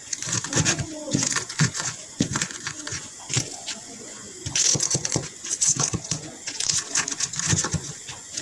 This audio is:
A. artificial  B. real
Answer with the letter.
A